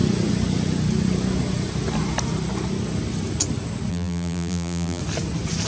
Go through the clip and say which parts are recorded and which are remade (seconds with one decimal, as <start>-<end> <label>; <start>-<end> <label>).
0.0-3.9 recorded; 3.9-5.0 remade; 5.0-5.7 recorded